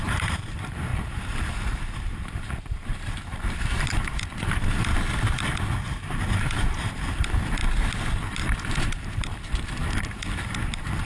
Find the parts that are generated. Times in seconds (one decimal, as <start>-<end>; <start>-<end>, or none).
0.0-4.9; 5.9-7.6; 8.8-11.1